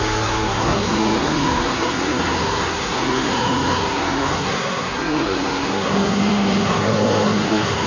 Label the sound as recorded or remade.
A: remade